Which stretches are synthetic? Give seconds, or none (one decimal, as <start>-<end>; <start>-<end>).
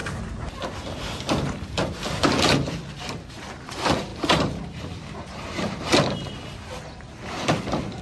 none